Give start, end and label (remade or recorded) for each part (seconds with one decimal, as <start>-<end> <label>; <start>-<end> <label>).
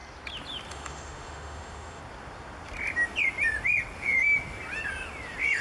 0.0-0.7 recorded; 0.7-2.0 remade; 2.0-5.6 recorded